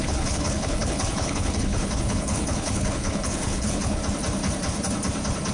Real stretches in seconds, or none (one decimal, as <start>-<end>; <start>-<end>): 4.0-5.5